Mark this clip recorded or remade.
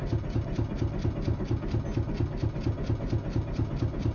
recorded